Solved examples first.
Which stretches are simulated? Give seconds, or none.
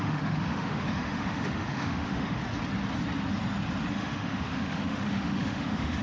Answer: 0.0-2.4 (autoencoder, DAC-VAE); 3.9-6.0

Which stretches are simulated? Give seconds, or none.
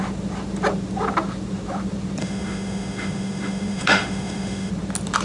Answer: 2.2-4.7 (autoencoder, DAC-VAE)